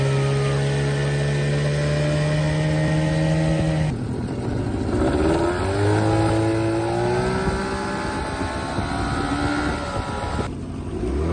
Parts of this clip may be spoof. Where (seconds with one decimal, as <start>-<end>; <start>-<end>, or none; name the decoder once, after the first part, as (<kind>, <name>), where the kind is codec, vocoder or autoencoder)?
none